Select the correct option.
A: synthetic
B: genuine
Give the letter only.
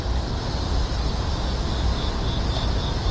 B